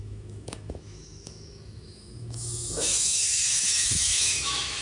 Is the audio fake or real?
fake